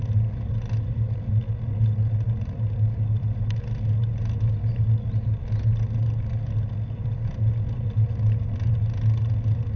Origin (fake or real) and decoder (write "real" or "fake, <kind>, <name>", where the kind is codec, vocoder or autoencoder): real